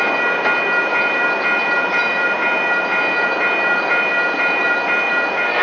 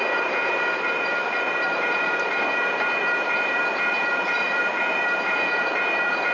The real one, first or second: first